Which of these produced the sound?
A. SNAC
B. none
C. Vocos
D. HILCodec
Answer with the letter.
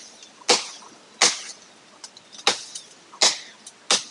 B